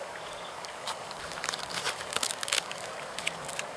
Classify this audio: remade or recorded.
remade